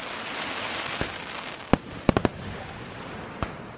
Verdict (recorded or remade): recorded